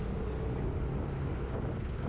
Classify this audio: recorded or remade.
recorded